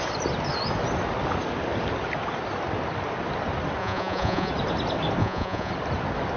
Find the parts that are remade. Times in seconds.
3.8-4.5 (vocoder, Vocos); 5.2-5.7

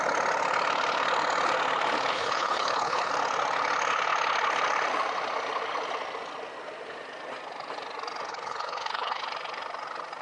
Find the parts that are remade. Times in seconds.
2.1-3.1 (codec, HILCodec); 8.3-9.2

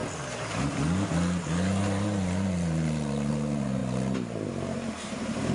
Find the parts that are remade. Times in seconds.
none

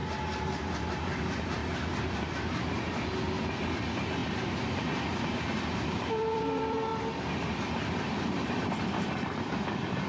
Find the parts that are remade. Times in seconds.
0.9-1.6 (vocoder, BigVGAN v2); 3.4-6.9; 7.9-10.1

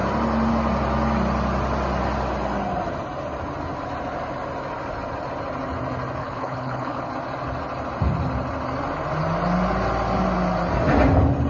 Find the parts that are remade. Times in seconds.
6.2-7.1 (codec, HILCodec)

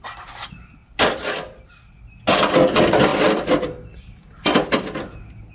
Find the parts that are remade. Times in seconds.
none